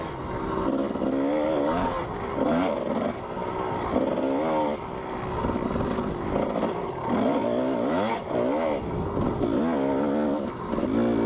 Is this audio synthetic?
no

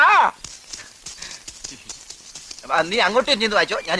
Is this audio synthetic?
no